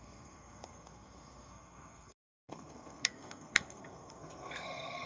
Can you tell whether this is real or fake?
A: fake